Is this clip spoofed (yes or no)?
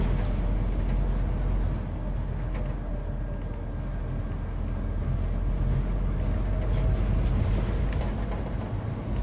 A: no